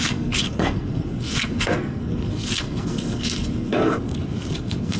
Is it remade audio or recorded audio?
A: remade